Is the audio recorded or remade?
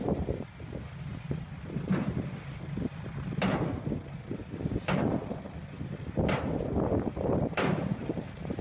recorded